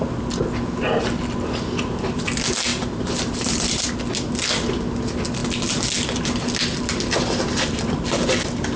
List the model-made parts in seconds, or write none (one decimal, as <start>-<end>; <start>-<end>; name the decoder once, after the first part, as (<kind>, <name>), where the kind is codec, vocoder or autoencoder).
2.7-3.9 (vocoder, BigVGAN v2)